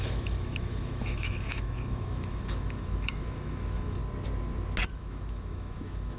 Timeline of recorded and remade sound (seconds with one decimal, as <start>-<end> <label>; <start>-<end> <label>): 0.0-4.0 remade; 4.0-4.9 recorded; 4.9-6.2 remade